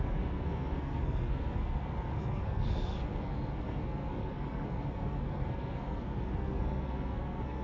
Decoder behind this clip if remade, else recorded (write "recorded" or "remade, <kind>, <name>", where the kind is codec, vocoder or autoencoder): remade, codec, SNAC